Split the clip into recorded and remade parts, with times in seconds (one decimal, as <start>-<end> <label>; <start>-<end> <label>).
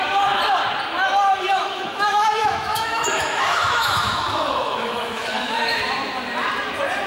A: 0.0-1.5 recorded; 1.5-5.8 remade; 5.8-7.1 recorded